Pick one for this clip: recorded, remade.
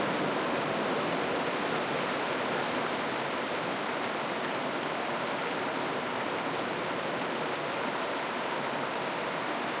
recorded